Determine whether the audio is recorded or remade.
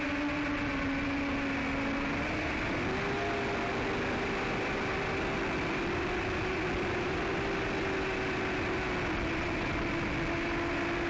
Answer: recorded